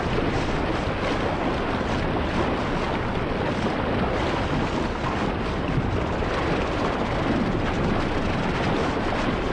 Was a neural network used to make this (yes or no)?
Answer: no